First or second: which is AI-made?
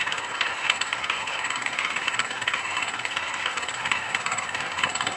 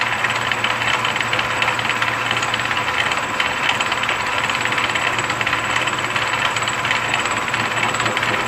first